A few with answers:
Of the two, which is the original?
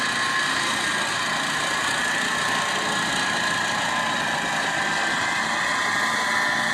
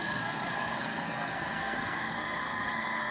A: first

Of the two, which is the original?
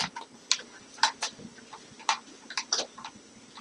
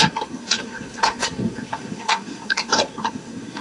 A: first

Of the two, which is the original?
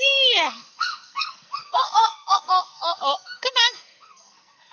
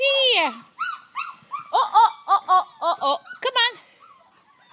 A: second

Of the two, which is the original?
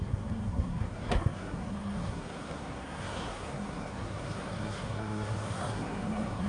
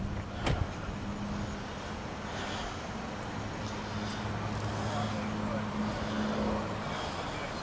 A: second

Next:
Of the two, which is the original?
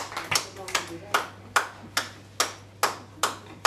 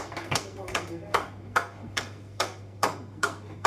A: first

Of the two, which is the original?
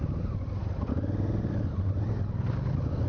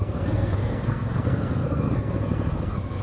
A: first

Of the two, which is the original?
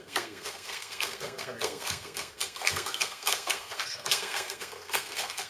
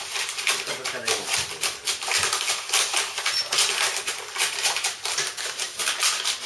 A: second